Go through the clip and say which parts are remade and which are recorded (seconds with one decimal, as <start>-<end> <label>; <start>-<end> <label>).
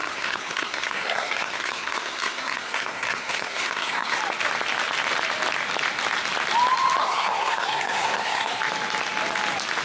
0.0-4.2 remade; 4.2-7.0 recorded; 7.0-8.6 remade; 8.6-9.8 recorded